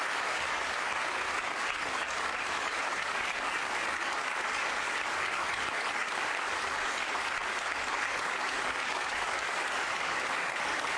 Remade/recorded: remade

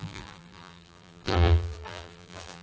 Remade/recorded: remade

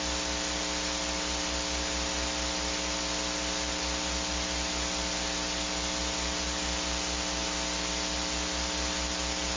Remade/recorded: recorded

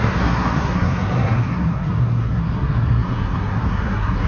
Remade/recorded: remade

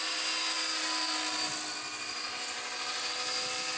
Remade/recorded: recorded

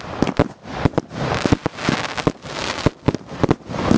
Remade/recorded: recorded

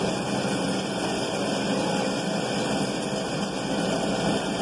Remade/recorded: recorded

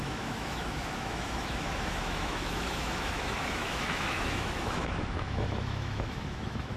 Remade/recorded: remade